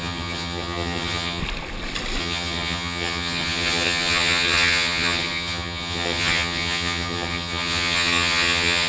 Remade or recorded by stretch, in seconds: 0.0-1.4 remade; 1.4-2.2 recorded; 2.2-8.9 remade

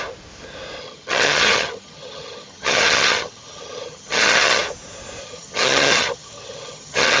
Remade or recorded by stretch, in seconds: 0.0-0.8 recorded; 0.8-4.6 remade; 4.6-5.2 recorded; 5.2-7.2 remade

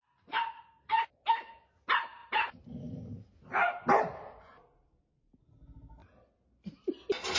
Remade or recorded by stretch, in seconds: 0.0-7.4 recorded

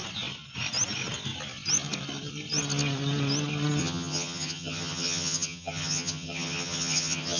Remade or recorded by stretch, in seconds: 0.0-3.8 recorded; 3.8-7.4 remade

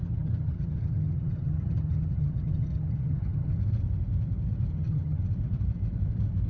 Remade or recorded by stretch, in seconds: 0.0-3.5 remade; 3.5-4.7 recorded; 4.7-5.2 remade; 5.2-6.5 recorded